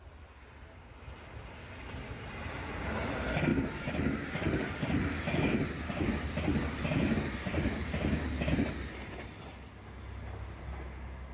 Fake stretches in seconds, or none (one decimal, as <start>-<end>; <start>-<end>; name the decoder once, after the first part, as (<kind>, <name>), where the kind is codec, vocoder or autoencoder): none